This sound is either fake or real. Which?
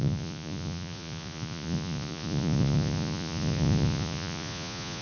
fake